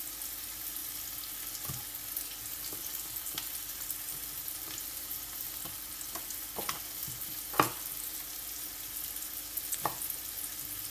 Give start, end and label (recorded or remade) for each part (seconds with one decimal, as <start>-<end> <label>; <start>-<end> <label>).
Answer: 0.0-10.9 recorded